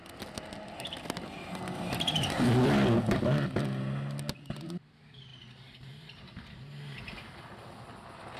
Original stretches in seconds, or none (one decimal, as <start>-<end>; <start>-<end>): 0.0-8.4